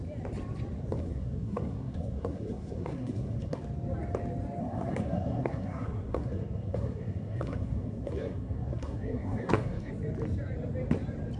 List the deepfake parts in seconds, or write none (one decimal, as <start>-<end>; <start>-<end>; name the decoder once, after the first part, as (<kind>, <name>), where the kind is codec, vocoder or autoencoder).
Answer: 1.0-3.6 (codec, SNAC); 4.6-9.9